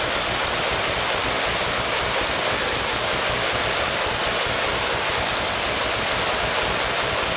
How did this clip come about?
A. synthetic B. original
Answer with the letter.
B